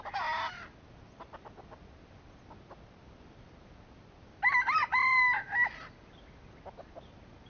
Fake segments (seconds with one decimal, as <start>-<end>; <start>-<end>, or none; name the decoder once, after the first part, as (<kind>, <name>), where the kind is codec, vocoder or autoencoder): none

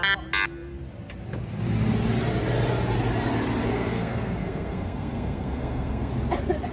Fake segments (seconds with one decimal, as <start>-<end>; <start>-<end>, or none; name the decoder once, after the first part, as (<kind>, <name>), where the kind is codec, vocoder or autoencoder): 3.7-6.1 (codec, SNAC)

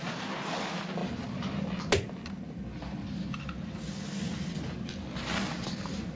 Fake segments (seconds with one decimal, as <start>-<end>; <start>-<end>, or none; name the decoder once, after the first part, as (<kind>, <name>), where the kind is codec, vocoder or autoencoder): none

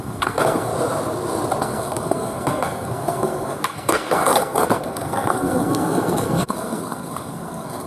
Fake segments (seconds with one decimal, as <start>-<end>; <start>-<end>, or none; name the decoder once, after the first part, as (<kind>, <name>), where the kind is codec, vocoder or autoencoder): 0.0-0.7 (codec, SNAC); 1.6-7.9

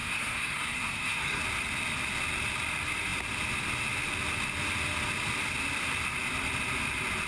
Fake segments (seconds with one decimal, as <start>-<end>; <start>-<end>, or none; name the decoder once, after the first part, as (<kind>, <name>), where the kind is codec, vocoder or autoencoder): 0.0-1.4 (codec, SNAC)

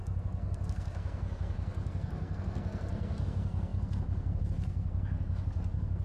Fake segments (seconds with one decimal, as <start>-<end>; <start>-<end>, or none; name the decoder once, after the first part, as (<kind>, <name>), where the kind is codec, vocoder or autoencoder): 0.0-6.0 (codec, SNAC)

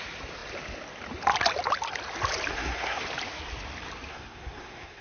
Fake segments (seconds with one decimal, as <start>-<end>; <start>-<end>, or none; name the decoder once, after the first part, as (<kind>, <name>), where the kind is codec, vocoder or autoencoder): 2.5-3.0 (codec, SNAC); 4.1-5.0